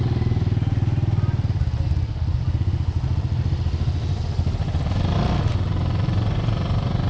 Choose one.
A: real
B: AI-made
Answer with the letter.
A